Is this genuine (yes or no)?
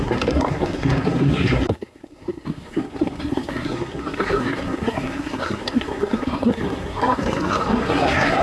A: no